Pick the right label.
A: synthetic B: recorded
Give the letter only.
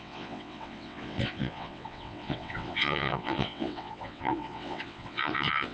A